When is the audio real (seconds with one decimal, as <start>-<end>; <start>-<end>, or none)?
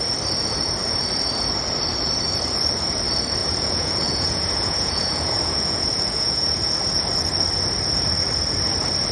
0.0-3.4; 6.7-9.1